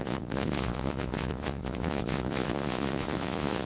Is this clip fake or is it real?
fake